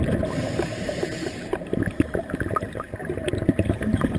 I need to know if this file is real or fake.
fake